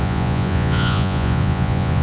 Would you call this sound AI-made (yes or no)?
yes